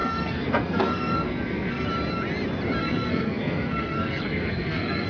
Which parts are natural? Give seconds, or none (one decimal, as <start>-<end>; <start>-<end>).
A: 1.9-2.8